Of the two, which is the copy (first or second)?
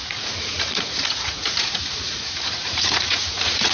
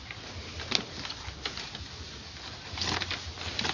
first